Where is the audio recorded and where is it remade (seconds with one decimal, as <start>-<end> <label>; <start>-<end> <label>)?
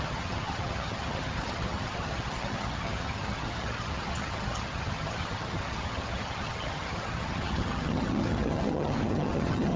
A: 0.0-9.8 remade